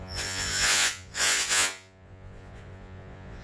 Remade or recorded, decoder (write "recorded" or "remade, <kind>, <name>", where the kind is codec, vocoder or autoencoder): remade, vocoder, Vocos